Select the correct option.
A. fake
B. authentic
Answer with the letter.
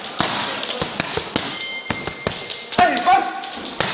B